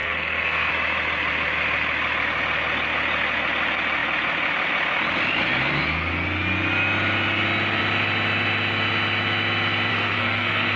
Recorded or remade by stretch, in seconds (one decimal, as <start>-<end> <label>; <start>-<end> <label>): 0.0-0.7 remade; 0.7-9.9 recorded; 9.9-10.8 remade